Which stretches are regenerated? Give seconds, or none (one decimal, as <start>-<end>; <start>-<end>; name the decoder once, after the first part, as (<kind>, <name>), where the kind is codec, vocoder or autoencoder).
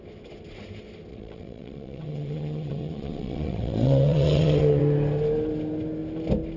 1.1-4.8 (vocoder, WaveNeXt)